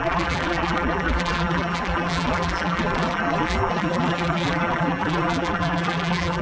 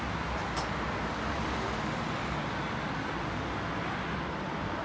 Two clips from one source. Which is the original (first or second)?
second